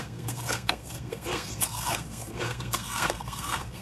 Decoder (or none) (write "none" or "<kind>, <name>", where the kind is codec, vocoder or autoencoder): codec, SNAC